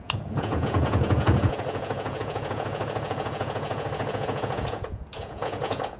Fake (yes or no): yes